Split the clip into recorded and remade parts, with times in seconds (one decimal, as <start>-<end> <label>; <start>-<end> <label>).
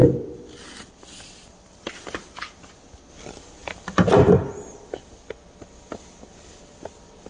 0.0-3.1 recorded; 3.1-7.3 remade